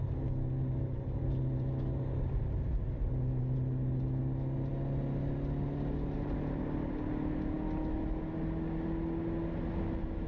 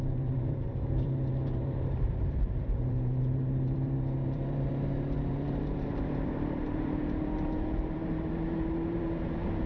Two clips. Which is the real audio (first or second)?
first